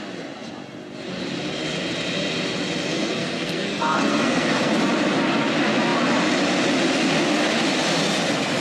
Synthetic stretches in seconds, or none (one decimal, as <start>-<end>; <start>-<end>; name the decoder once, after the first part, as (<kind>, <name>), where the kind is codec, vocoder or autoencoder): 2.9-4.8 (codec, SNAC)